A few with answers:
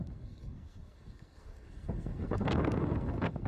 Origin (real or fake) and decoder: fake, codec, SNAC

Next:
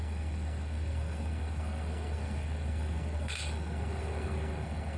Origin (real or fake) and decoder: fake, codec, SNAC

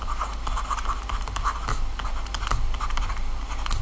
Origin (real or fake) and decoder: real